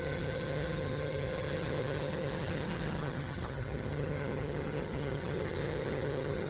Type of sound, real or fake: fake